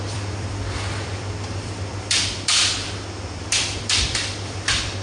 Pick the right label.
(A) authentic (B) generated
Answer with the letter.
B